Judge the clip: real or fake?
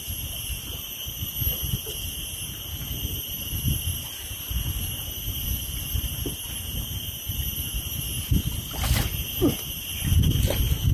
real